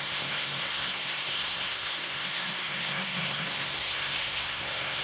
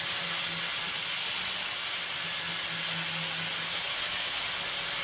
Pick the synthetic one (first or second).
first